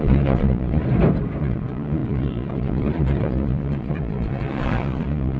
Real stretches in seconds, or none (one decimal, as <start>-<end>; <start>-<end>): 0.8-1.4